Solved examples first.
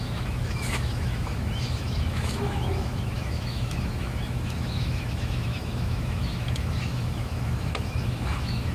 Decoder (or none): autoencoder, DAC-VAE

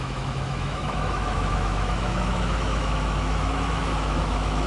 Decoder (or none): autoencoder, DAC-VAE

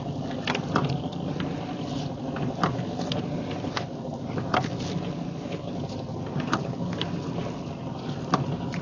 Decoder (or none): none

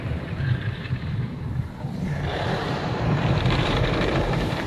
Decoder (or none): vocoder, BigVGAN v2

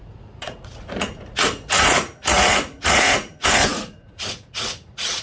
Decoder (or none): vocoder, Vocos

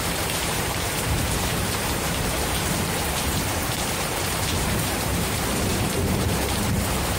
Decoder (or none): vocoder, BigVGAN v2